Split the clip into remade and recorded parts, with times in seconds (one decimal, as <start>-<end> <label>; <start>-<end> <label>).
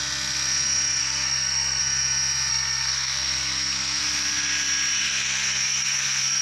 0.0-1.0 recorded; 1.0-1.8 remade; 1.8-2.5 recorded; 2.5-4.0 remade; 4.0-5.0 recorded; 5.0-6.4 remade